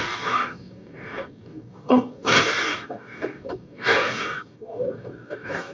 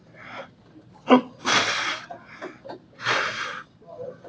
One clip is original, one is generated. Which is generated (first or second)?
first